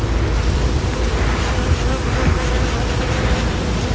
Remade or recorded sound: recorded